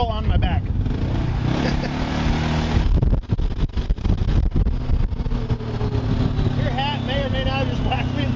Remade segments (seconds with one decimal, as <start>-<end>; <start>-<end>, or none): none